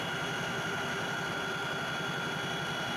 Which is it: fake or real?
real